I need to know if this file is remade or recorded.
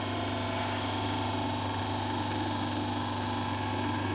recorded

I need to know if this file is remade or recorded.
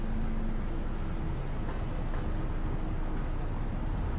recorded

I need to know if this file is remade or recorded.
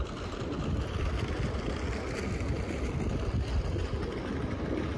recorded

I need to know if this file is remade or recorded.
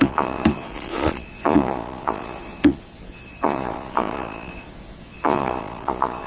remade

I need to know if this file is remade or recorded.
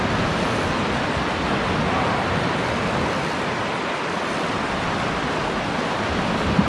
recorded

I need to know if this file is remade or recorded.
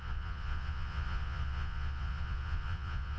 remade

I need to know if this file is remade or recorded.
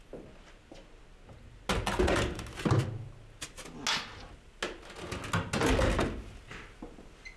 recorded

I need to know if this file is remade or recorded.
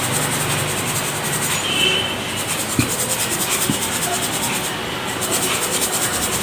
recorded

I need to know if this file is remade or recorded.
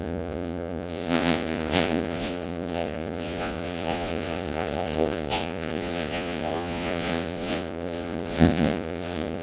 remade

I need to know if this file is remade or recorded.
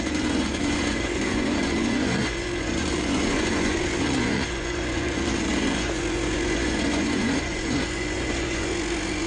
remade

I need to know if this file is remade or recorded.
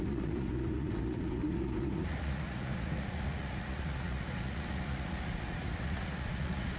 remade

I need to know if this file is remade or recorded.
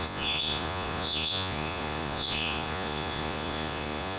remade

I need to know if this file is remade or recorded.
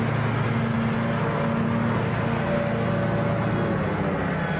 recorded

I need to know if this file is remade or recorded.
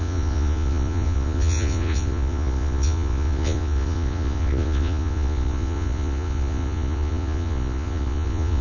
remade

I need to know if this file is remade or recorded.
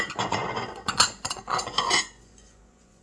remade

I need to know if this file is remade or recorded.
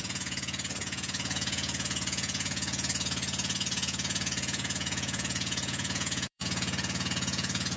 remade